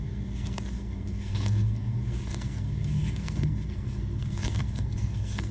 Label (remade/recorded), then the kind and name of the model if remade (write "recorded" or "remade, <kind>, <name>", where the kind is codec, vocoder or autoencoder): remade, codec, SNAC